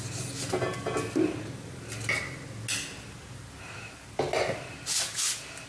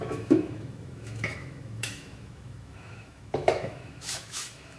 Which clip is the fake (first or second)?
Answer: second